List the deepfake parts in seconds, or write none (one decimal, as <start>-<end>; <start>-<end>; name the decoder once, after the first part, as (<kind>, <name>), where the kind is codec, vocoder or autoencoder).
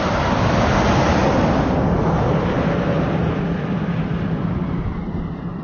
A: none